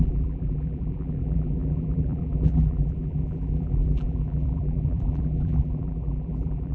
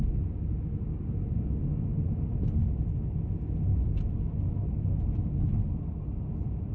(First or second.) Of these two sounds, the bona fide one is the second